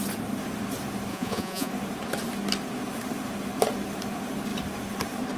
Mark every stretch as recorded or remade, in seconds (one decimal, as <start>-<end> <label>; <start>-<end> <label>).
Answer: 0.0-1.1 recorded; 1.1-1.7 remade; 1.7-5.4 recorded